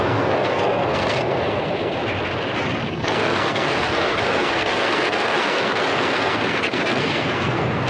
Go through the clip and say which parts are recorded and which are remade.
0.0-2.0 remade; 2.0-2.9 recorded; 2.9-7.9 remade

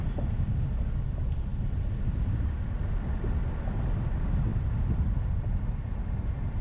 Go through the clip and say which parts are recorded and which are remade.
0.0-6.6 recorded

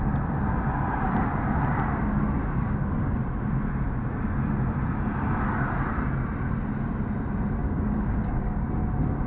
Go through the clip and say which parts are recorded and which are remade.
0.0-2.4 recorded; 2.4-3.2 remade; 3.2-7.6 recorded; 7.6-8.7 remade; 8.7-9.3 recorded